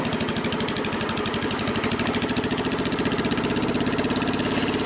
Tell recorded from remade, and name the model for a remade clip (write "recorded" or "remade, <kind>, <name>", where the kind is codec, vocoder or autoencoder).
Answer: recorded